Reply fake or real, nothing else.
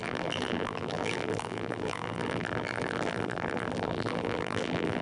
fake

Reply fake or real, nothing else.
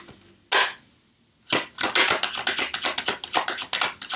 real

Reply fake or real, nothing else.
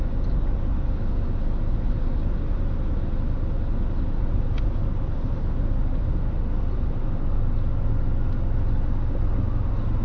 real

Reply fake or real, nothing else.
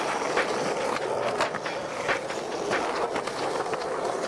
real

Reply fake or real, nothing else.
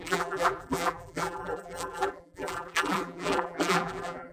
fake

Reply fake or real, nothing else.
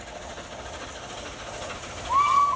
real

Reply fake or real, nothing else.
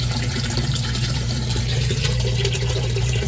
fake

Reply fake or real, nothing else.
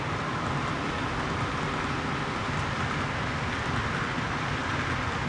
real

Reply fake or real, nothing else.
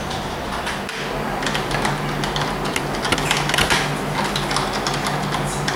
real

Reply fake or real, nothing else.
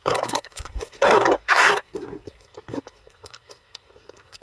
fake